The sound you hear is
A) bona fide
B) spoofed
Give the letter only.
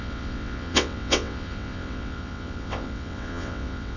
B